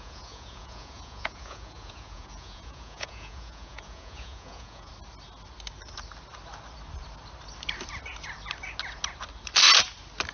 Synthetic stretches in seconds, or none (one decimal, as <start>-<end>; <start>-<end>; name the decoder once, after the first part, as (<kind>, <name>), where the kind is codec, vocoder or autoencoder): 0.0-4.9 (vocoder, Vocos)